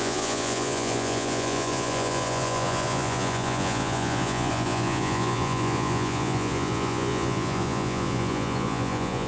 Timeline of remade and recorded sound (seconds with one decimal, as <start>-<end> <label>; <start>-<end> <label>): 0.0-9.3 remade